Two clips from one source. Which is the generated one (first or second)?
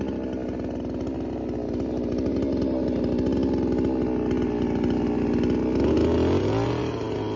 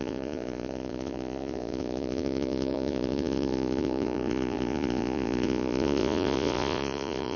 second